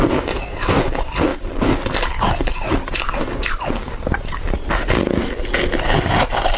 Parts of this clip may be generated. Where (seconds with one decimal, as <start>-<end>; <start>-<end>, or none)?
none